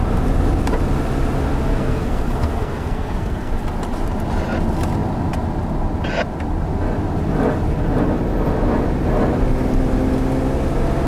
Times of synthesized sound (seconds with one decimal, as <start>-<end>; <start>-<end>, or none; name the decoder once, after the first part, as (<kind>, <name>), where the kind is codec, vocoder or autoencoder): 1.7-3.5 (codec, SNAC)